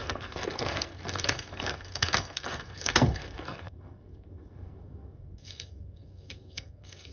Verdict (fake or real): fake